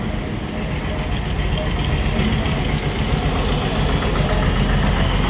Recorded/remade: recorded